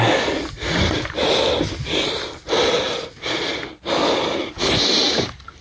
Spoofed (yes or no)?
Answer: no